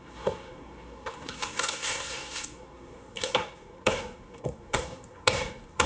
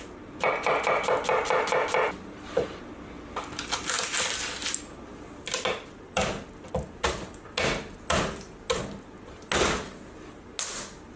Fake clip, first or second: first